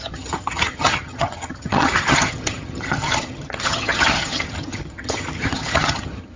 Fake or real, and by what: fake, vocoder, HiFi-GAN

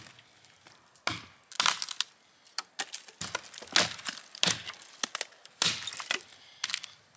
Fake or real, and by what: real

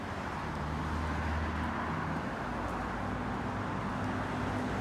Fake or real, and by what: real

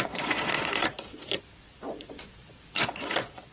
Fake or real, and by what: fake, vocoder, Vocos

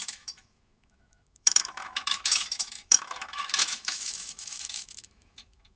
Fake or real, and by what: fake, autoencoder, DAC-VAE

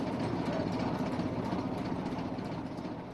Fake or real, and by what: real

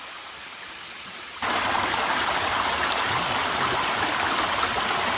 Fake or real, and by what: real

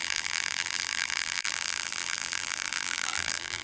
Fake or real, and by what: fake, vocoder, BigVGAN v2